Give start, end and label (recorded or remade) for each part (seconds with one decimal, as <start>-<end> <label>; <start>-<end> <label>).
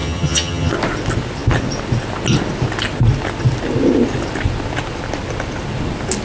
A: 0.0-0.7 remade; 0.7-6.2 recorded